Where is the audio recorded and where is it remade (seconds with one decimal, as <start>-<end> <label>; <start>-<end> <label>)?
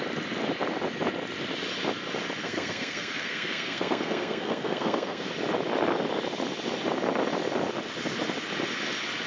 0.0-2.4 recorded; 2.4-5.3 remade; 5.3-9.3 recorded